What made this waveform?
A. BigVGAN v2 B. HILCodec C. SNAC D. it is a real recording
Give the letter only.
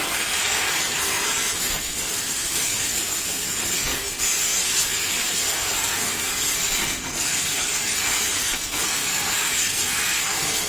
C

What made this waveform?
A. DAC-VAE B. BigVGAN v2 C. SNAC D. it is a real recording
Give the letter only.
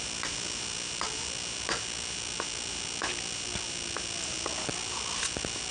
D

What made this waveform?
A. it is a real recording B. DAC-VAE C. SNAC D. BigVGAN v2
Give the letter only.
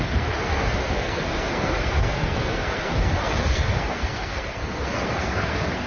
C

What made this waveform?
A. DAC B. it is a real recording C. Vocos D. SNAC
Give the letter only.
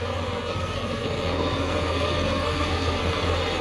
D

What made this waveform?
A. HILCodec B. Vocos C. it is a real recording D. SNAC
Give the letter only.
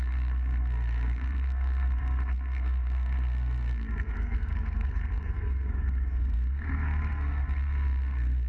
D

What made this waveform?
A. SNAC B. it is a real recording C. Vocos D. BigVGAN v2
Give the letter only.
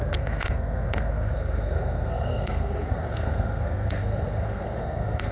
A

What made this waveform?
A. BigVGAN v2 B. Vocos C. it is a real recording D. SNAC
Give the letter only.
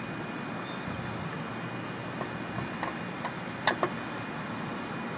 C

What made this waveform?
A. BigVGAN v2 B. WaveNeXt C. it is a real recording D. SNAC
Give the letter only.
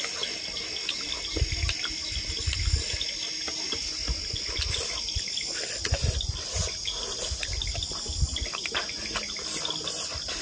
C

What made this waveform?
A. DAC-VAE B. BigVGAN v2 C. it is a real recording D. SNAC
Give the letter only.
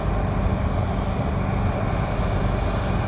C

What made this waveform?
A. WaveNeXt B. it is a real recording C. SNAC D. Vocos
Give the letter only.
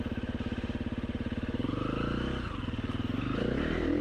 B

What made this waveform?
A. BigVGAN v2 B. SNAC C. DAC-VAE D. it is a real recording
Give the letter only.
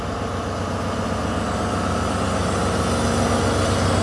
D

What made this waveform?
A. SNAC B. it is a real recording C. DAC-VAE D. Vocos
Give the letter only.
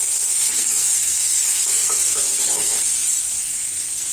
A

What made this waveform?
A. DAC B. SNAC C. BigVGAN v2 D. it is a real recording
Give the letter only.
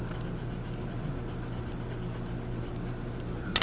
D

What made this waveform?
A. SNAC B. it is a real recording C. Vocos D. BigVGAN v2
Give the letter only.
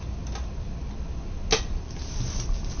B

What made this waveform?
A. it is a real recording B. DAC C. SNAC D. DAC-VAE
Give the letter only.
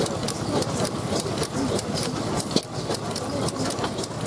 A